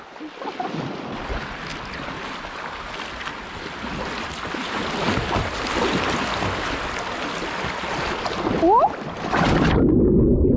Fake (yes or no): no